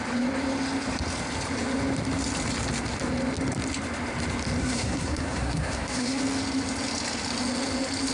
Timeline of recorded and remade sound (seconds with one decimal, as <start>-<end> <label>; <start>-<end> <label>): 0.0-4.6 recorded; 4.6-6.2 remade; 6.2-8.1 recorded